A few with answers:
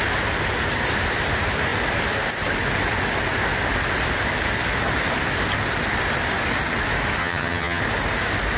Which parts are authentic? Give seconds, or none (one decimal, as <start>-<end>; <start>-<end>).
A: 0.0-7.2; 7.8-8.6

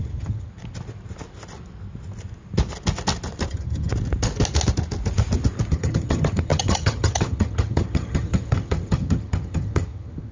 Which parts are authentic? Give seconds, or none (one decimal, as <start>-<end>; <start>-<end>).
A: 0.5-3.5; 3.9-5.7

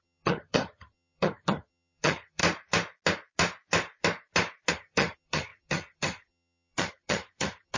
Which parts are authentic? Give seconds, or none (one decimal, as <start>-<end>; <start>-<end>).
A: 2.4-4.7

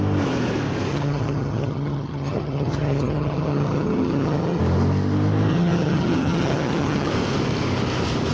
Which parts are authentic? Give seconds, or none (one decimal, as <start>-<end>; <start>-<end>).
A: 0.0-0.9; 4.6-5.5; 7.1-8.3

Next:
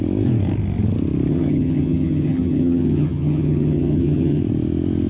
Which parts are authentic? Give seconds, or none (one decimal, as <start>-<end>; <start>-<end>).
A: 0.0-1.3; 4.4-5.1